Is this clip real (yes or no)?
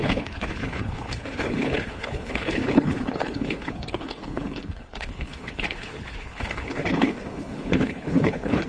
no